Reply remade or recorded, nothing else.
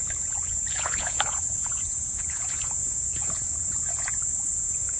remade